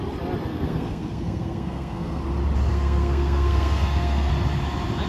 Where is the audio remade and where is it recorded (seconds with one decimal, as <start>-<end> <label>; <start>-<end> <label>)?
0.0-0.5 recorded; 0.5-2.2 remade; 2.2-2.7 recorded; 2.7-4.3 remade; 4.3-5.1 recorded